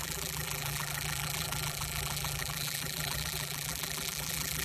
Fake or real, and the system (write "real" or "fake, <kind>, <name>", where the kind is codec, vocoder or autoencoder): fake, vocoder, BigVGAN v2